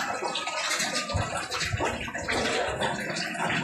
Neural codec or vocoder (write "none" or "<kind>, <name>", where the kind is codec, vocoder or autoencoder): none